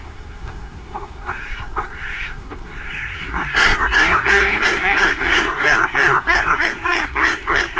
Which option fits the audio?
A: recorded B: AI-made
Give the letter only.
B